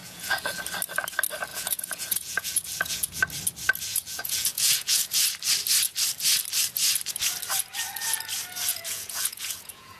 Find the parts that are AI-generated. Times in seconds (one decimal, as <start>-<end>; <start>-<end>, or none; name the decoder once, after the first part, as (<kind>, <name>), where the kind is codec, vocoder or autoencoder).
0.0-0.6 (vocoder, Vocos); 1.5-3.2; 3.9-5.2; 8.7-10.0